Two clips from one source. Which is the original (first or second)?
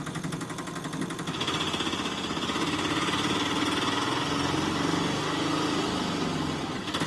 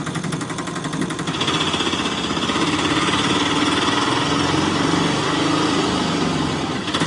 first